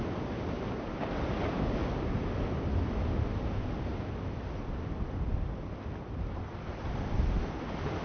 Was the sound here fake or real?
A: real